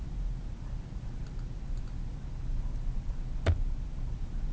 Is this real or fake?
real